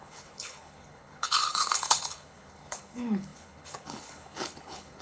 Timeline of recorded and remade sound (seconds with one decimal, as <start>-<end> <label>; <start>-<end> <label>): 0.0-5.0 remade